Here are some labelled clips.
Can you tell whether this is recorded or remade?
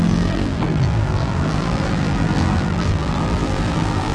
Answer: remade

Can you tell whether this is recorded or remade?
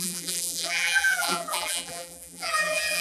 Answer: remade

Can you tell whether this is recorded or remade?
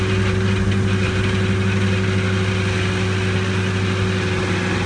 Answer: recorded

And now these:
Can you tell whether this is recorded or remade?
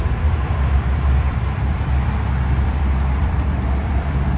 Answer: remade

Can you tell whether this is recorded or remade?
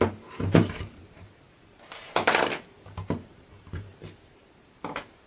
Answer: remade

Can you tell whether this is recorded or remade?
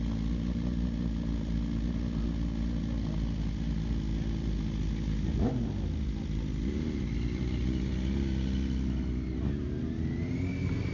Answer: recorded